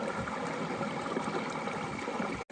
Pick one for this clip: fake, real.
real